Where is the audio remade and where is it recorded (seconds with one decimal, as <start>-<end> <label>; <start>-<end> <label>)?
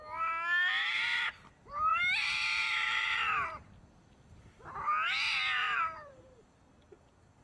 0.0-0.8 recorded; 0.8-1.3 remade; 1.3-1.9 recorded; 1.9-4.7 remade; 4.7-5.6 recorded; 5.6-6.6 remade; 6.6-7.4 recorded